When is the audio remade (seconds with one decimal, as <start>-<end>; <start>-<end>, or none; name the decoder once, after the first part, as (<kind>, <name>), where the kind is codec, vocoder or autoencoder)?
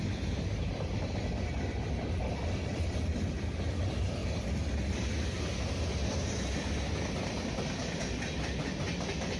none